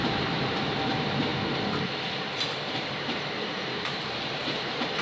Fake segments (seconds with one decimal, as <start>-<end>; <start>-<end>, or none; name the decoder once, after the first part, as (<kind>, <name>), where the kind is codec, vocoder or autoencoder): 0.0-1.3 (vocoder, BigVGAN v2); 2.5-5.0